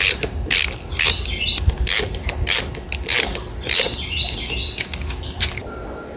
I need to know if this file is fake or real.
real